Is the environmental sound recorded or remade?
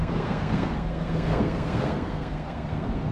remade